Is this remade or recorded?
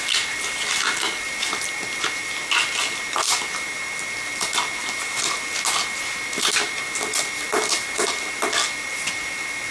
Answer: recorded